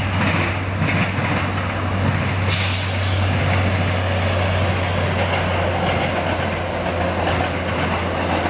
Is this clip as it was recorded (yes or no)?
yes